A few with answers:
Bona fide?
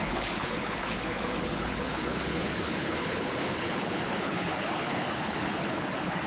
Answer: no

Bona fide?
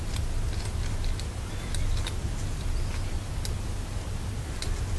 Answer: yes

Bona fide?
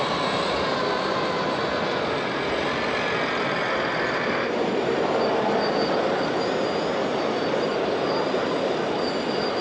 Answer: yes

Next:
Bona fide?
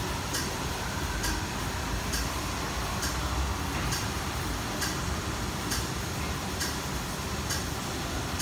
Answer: yes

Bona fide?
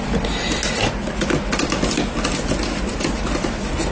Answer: yes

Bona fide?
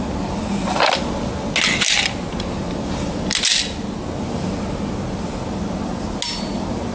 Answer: yes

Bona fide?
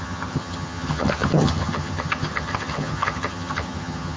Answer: no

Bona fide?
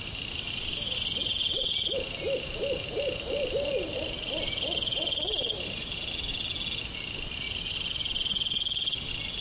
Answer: yes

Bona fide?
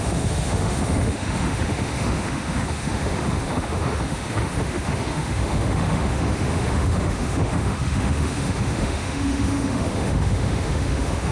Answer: no